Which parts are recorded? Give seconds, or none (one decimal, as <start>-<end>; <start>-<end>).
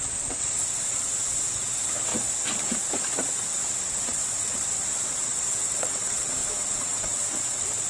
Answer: 2.1-3.4